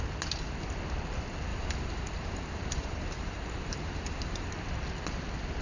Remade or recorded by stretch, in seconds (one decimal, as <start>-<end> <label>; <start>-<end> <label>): 0.0-1.5 recorded; 1.5-4.5 remade; 4.5-5.6 recorded